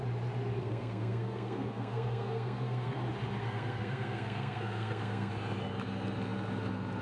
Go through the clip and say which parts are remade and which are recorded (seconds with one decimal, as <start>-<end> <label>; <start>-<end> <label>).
0.0-0.6 recorded; 0.6-2.9 remade; 2.9-3.4 recorded; 3.4-5.3 remade; 5.3-7.0 recorded